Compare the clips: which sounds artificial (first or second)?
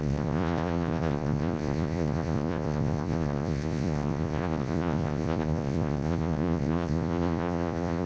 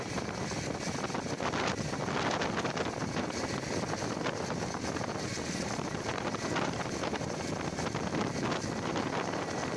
first